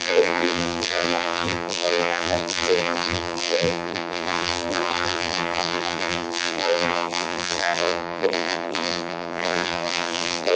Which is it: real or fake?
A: fake